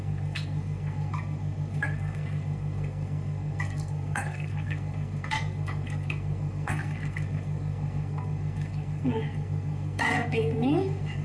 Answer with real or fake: fake